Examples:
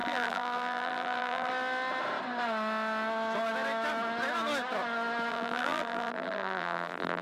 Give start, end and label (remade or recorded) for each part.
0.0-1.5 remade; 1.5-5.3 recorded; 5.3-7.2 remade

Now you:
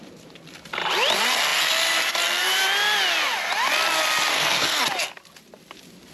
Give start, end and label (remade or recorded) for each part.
0.0-4.3 recorded; 4.3-4.8 remade; 4.8-6.1 recorded

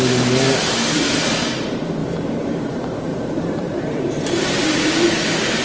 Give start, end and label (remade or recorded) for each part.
0.0-2.0 recorded; 2.0-2.6 remade; 2.6-3.1 recorded; 3.1-5.6 remade

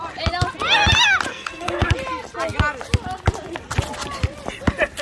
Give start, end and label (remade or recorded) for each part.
0.0-1.3 recorded; 1.3-1.9 remade; 1.9-5.0 recorded

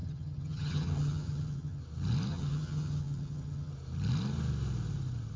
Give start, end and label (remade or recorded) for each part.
0.0-1.8 remade; 1.8-2.3 recorded; 2.3-3.7 remade; 3.7-5.4 recorded

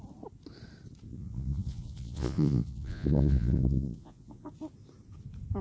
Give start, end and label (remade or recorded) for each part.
0.0-1.1 recorded; 1.1-4.5 remade; 4.5-5.6 recorded

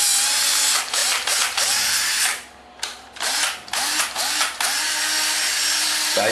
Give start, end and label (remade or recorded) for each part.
0.0-6.3 recorded